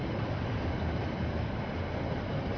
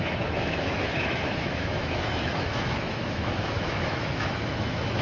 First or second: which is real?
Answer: first